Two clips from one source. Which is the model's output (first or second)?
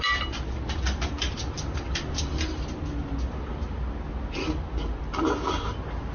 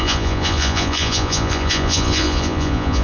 second